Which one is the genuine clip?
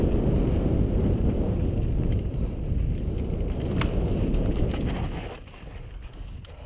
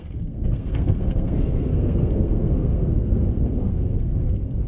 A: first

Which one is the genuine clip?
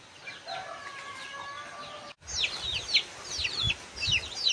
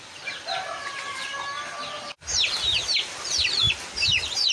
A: first